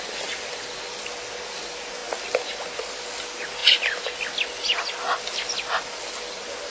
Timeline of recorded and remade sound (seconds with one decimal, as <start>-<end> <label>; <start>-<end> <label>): 0.0-6.7 recorded